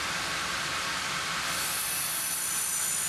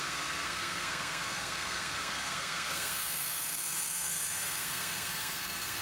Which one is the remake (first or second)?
second